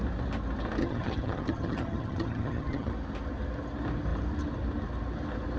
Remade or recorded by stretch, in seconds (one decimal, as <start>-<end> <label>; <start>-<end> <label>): 0.0-0.8 recorded; 0.8-2.9 remade; 2.9-5.6 recorded